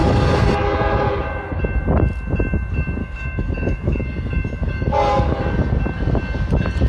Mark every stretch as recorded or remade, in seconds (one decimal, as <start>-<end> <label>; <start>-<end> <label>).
0.0-3.0 recorded; 3.0-5.4 remade; 5.4-6.9 recorded